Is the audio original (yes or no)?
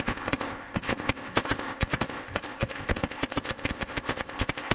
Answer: no